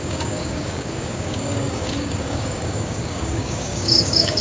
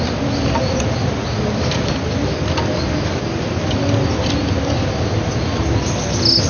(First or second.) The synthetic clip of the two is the first